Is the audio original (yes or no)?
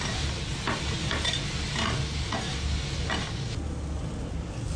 yes